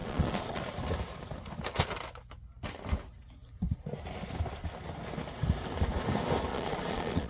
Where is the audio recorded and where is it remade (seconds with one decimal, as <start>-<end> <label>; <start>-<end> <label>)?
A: 0.0-0.6 remade; 0.6-6.5 recorded; 6.5-7.3 remade